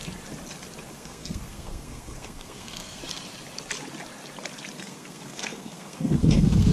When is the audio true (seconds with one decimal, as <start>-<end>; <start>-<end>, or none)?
0.0-0.9; 3.0-4.8